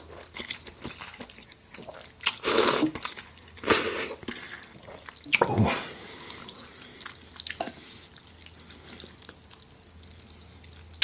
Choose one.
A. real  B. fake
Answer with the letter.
A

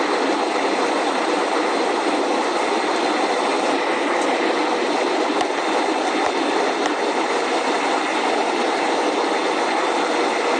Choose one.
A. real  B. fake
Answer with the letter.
A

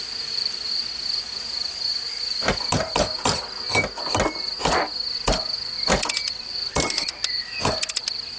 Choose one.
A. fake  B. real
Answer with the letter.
B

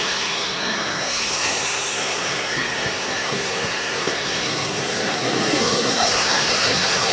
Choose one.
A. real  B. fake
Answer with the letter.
B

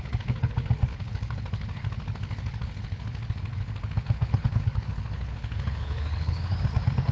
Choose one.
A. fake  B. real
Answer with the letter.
A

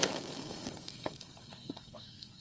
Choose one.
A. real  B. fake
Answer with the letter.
B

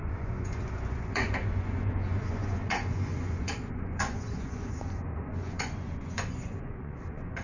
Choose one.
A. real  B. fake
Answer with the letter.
B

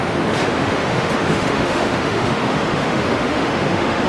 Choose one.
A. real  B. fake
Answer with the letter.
B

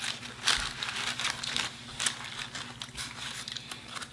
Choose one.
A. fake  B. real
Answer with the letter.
B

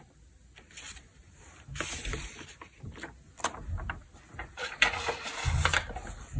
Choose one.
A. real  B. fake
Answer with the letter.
A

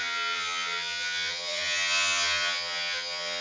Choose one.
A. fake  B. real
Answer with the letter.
A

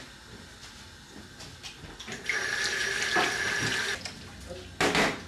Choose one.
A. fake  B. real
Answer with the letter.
B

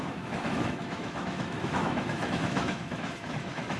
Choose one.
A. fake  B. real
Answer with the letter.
A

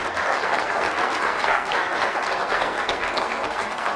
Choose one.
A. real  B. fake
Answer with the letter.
B